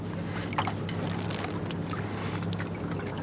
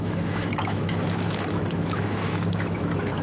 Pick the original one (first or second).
first